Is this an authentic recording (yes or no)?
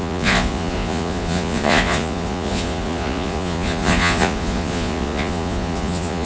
no